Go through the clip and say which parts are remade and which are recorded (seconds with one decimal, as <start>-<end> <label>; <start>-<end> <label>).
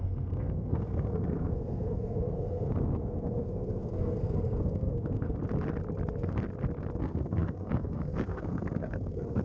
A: 0.0-5.4 remade; 5.4-7.0 recorded; 7.0-9.4 remade